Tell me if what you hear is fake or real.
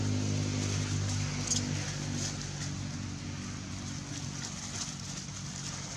real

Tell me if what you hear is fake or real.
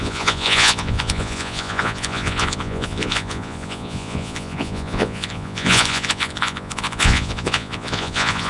fake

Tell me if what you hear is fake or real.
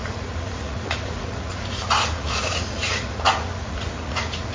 fake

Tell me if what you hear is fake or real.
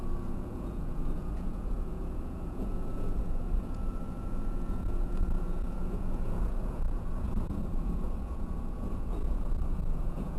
fake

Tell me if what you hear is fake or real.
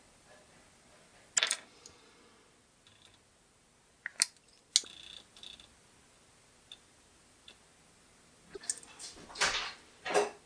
real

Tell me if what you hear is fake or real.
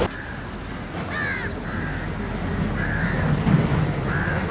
real